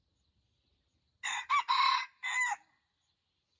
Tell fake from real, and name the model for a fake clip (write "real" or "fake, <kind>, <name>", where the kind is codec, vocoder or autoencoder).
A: real